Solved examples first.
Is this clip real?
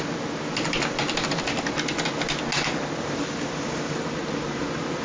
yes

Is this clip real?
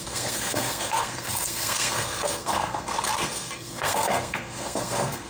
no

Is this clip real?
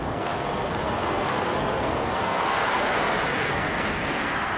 no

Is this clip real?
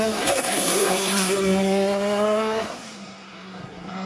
no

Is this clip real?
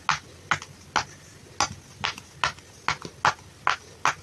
yes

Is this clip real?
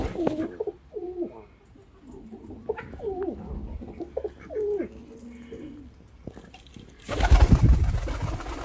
yes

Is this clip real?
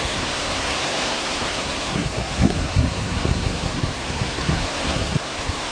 no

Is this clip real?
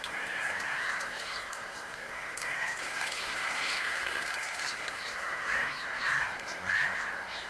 no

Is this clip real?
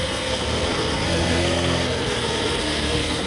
no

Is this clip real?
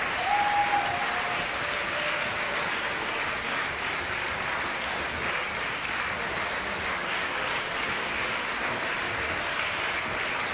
yes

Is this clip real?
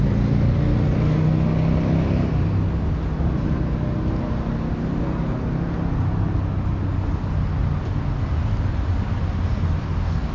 yes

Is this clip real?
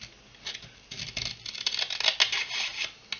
yes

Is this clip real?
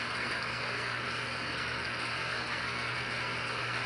no